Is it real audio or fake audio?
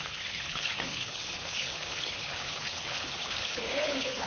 fake